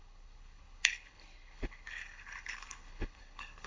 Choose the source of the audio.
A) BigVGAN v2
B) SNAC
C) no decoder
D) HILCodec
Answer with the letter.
D